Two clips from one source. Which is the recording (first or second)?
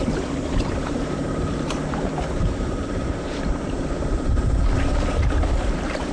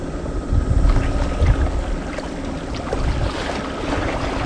second